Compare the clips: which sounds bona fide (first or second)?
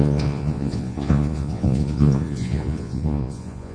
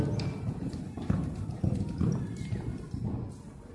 second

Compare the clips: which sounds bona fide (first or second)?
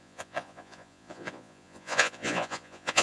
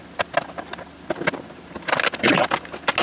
second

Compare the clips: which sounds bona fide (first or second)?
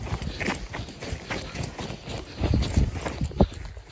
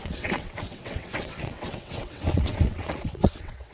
first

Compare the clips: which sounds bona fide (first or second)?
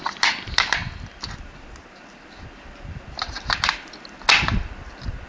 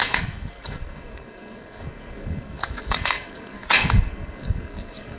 first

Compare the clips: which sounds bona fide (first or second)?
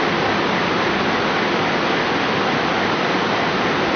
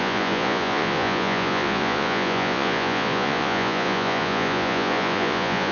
first